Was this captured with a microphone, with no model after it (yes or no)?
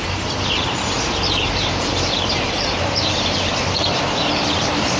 no